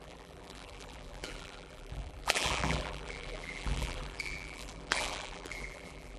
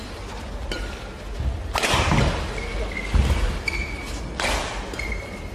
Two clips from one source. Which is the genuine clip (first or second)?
second